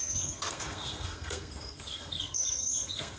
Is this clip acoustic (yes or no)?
no